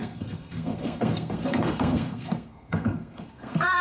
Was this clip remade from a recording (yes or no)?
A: yes